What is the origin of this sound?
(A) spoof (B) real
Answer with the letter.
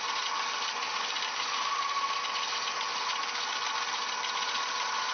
B